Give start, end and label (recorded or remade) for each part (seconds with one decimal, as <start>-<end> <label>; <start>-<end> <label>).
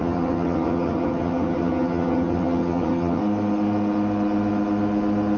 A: 0.0-3.2 remade; 3.2-5.4 recorded